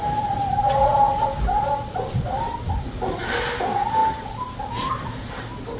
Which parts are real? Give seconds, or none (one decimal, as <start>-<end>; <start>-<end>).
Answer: 0.0-5.8